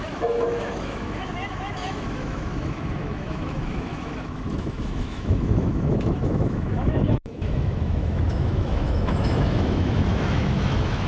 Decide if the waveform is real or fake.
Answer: fake